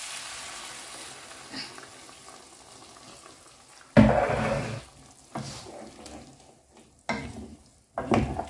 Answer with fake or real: real